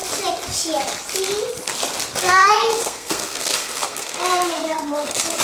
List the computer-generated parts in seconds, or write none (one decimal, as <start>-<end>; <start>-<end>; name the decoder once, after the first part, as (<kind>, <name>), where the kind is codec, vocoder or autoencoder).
2.2-5.4 (codec, SNAC)